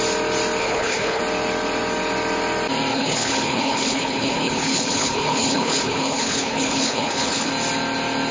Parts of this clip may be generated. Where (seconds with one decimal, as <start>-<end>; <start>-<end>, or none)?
0.6-1.2; 2.9-7.5